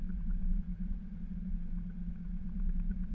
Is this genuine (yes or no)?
no